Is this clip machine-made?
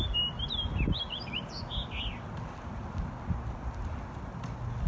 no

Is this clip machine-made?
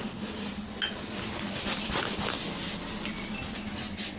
no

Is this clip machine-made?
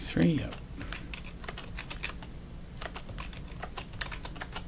no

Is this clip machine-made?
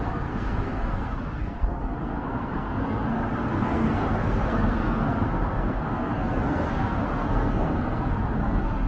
yes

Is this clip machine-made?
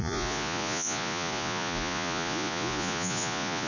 yes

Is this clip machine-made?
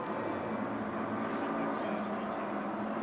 no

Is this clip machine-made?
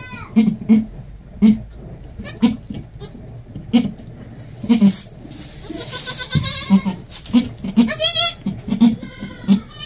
no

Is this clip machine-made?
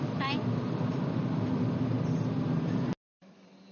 no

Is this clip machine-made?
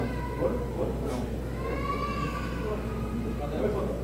no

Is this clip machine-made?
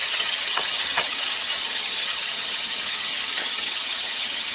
yes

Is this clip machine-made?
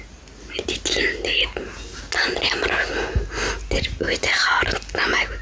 no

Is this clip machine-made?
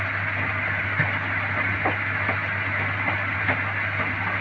no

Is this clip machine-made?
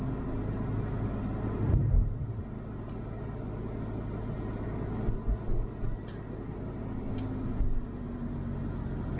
no